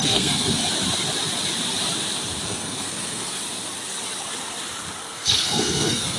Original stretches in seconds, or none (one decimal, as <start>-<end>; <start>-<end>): 0.6-2.4; 3.4-5.0